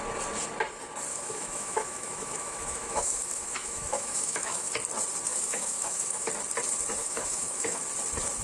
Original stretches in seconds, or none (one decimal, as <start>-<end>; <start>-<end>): 0.0-1.1; 4.7-5.3; 6.3-7.0; 7.8-8.4

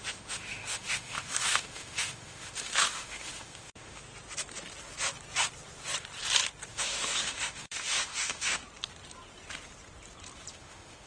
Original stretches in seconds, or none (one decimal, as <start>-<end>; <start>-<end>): 4.0-6.7; 8.6-10.5

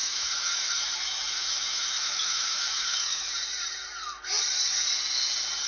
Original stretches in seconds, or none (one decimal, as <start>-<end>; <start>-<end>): 3.3-5.7

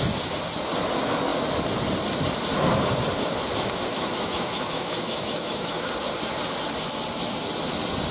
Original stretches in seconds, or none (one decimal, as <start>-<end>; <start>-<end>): 0.0-3.9; 5.9-8.1

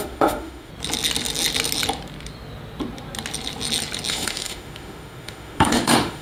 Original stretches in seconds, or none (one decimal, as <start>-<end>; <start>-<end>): 0.7-4.1

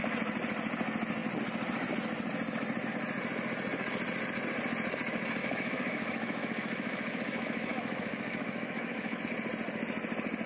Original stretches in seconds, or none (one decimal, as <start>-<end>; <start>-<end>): 0.0-5.4; 9.2-10.5

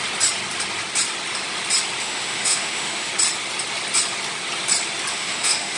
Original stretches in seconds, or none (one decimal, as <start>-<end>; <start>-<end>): 0.0-2.0; 3.1-5.1